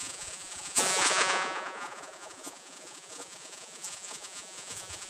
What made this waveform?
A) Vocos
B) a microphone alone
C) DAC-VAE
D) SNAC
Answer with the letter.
A